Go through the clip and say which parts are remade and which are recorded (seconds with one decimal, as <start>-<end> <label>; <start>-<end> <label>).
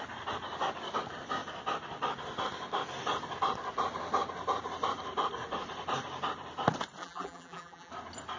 0.0-7.0 recorded; 7.0-7.9 remade; 7.9-8.4 recorded